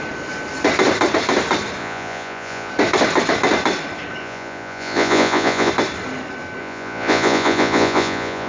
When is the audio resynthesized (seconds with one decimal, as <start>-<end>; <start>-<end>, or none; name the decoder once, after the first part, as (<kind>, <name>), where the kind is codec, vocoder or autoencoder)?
1.8-2.7 (vocoder, Vocos); 4.2-5.7; 6.6-8.5